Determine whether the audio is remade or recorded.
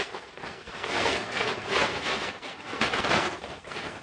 remade